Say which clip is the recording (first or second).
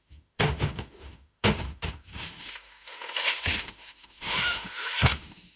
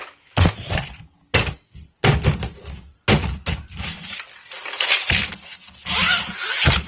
second